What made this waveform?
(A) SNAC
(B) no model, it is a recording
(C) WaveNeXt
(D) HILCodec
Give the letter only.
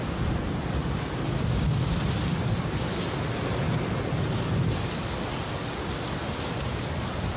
B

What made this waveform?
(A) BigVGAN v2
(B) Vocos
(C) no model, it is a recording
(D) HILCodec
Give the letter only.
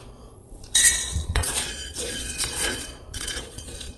B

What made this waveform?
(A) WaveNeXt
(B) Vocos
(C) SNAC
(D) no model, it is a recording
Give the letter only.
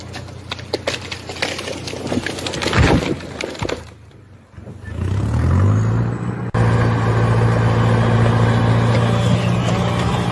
D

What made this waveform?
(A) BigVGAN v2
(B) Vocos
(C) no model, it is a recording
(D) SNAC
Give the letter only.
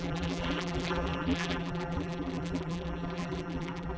A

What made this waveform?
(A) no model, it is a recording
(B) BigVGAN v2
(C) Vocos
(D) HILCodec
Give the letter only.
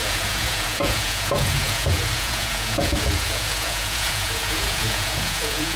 C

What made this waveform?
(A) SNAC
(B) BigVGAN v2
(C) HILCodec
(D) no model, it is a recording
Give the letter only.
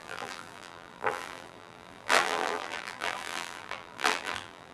B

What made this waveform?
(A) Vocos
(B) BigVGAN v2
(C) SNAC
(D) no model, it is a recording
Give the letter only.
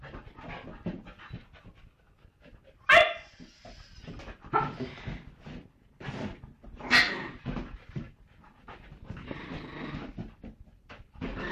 D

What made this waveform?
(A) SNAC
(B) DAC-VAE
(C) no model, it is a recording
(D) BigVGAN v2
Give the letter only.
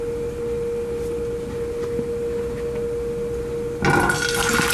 C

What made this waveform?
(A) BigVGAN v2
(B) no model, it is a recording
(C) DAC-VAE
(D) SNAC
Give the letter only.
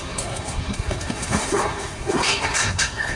D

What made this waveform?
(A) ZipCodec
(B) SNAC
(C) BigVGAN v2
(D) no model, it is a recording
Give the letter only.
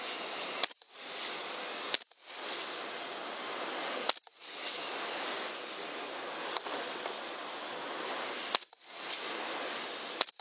D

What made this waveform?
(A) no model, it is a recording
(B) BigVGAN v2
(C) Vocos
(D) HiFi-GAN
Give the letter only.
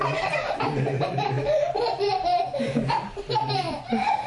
B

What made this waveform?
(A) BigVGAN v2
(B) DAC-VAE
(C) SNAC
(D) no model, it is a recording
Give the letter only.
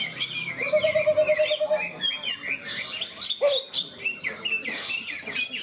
D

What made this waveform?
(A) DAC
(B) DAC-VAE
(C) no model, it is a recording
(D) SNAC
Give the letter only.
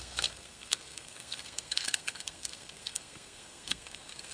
D